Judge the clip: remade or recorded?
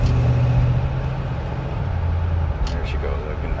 recorded